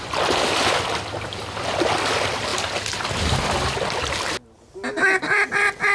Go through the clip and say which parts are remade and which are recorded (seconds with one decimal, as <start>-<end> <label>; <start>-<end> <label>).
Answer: 0.0-5.9 recorded